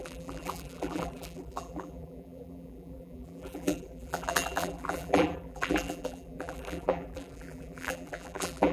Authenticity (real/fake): fake